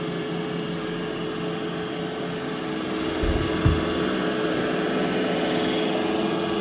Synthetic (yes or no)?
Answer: no